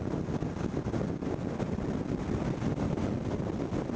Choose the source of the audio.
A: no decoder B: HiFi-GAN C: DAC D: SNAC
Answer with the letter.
A